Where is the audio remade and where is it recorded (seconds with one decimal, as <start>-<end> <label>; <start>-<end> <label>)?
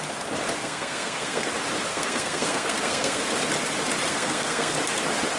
0.0-0.6 recorded; 0.6-1.5 remade; 1.5-1.9 recorded; 1.9-3.2 remade; 3.2-4.1 recorded; 4.1-4.7 remade; 4.7-5.4 recorded